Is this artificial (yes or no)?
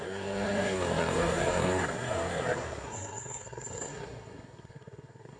yes